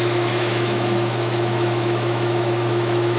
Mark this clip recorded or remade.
remade